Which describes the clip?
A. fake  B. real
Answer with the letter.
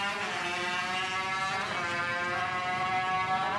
B